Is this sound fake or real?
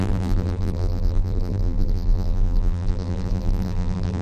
fake